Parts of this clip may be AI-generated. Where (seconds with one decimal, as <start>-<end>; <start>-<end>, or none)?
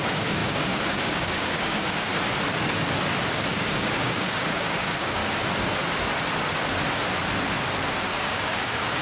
0.0-2.1; 3.3-5.2; 7.9-9.0